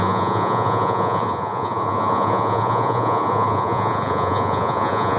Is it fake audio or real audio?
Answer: fake